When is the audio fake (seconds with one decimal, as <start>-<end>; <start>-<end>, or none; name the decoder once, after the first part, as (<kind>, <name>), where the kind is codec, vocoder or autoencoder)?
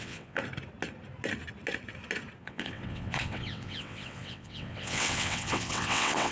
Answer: 0.0-0.4 (vocoder, WaveNeXt); 2.4-6.3